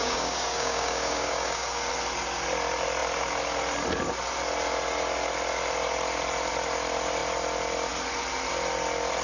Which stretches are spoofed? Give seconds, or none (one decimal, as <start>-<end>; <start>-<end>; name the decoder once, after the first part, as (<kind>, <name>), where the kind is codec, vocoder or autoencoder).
0.0-1.9 (codec, DAC)